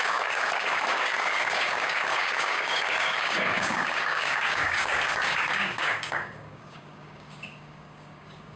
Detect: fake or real fake